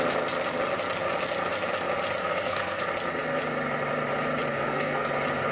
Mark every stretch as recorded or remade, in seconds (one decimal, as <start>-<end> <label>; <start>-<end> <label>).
0.0-2.2 recorded; 2.2-2.8 remade; 2.8-4.5 recorded; 4.5-5.1 remade; 5.1-5.5 recorded